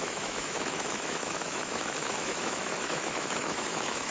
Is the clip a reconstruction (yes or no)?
yes